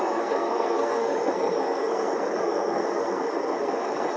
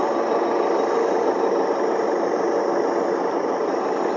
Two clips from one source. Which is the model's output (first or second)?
first